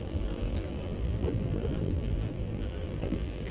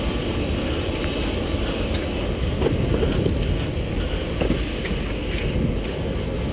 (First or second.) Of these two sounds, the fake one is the first